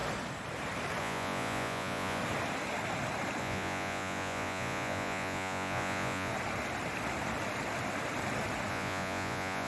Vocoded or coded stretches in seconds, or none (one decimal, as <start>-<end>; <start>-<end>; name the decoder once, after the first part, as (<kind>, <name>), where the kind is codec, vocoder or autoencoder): 1.0-2.2 (vocoder, Vocos); 3.4-6.3; 8.7-9.7